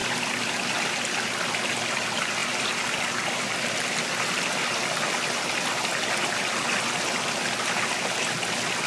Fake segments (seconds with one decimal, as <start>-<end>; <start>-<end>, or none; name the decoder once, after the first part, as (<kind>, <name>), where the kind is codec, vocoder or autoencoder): 0.0-0.6 (vocoder, BigVGAN v2); 2.4-4.0